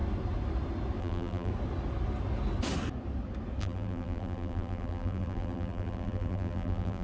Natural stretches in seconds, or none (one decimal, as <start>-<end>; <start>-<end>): 0.0-1.0; 1.5-3.6